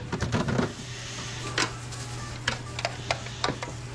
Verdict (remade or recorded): recorded